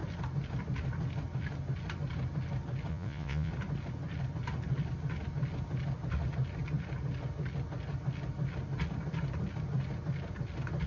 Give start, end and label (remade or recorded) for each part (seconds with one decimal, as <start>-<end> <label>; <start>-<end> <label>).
0.0-2.9 recorded; 2.9-3.5 remade; 3.5-10.9 recorded